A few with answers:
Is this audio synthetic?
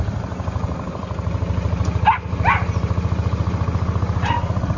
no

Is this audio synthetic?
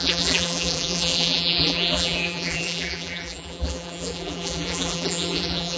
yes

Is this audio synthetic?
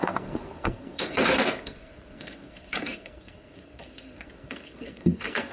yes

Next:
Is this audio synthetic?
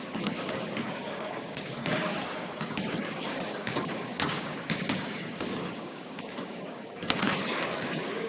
yes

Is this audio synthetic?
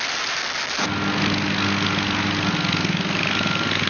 no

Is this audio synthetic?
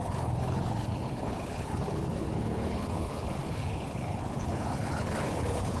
yes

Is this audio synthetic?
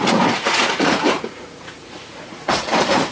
yes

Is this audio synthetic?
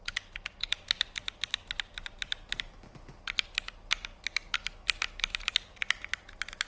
no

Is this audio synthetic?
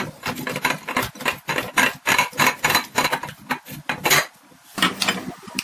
no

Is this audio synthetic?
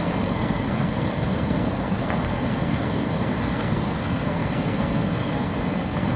yes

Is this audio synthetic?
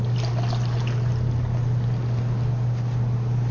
no